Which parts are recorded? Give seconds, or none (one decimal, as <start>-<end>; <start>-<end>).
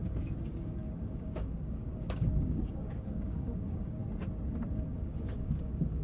4.0-4.7